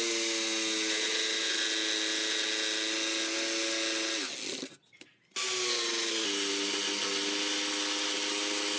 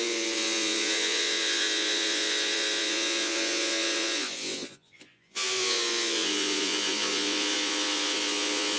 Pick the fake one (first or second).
second